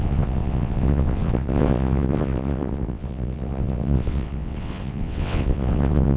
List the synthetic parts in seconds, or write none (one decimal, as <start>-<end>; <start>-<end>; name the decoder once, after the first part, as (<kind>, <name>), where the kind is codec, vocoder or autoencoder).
0.0-6.2 (vocoder, WaveNeXt)